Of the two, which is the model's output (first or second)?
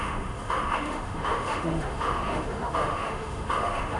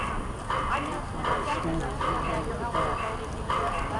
first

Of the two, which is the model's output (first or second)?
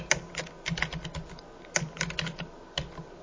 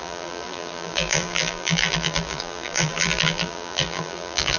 second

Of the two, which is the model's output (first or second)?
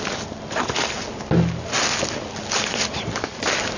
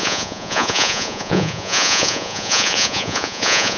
second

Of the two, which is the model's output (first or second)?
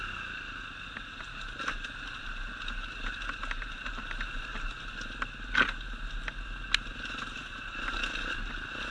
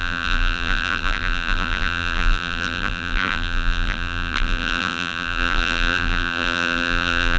second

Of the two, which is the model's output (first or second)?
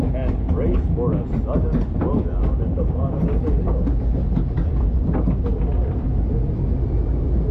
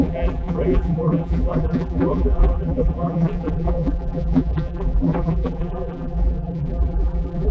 second